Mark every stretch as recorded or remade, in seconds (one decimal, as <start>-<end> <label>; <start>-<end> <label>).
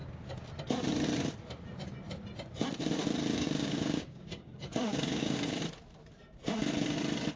0.0-3.3 recorded; 3.3-5.6 remade; 5.6-7.4 recorded